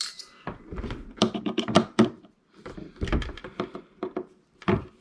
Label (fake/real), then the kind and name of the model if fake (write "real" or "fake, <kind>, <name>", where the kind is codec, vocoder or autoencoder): fake, vocoder, BigVGAN v2